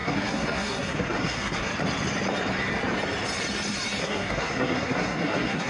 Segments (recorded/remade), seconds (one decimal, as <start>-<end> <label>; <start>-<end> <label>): 0.0-1.7 remade; 1.7-4.0 recorded; 4.0-5.7 remade